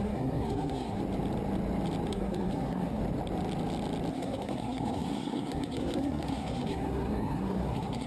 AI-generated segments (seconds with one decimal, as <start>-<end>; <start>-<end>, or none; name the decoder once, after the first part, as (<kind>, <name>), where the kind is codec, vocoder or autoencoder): 0.0-1.0 (codec, SNAC); 2.1-3.0; 4.1-8.1